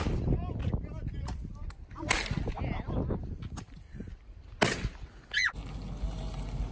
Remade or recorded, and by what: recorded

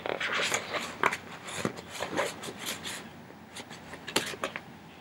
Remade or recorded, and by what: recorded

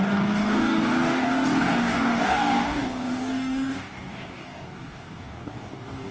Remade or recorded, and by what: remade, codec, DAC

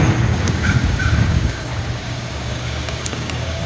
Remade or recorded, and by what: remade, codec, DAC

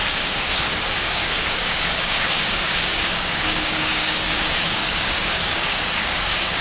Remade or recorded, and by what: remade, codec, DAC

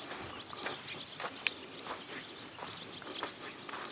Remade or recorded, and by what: recorded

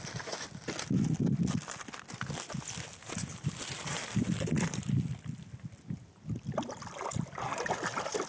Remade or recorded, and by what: recorded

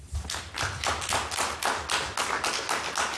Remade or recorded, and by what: recorded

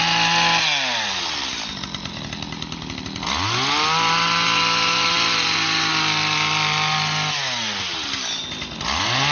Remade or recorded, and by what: recorded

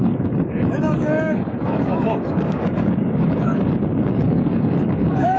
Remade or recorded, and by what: remade, codec, DAC